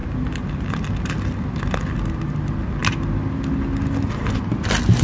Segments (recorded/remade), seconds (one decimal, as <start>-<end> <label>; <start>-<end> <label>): 0.0-5.0 recorded